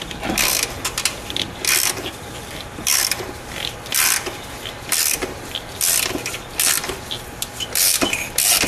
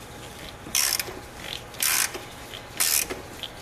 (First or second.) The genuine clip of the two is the second